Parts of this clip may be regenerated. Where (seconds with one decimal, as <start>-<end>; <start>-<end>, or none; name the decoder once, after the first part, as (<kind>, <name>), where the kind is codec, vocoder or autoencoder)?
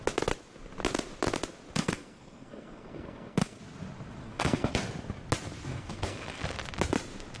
1.8-3.6 (codec, SNAC); 4.2-4.7; 5.7-6.4